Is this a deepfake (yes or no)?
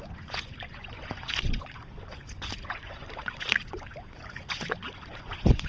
yes